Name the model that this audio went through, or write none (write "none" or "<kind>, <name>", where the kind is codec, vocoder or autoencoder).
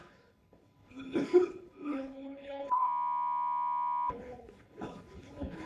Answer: codec, HILCodec